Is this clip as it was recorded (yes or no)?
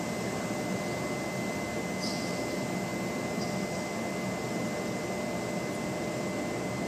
yes